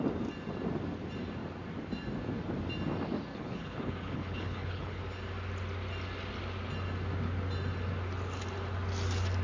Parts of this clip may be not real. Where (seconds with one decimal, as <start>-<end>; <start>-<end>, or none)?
3.3-5.0